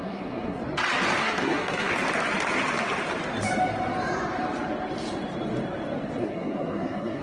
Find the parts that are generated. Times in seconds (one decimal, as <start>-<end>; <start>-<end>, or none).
0.0-0.6; 1.2-1.9; 6.2-7.2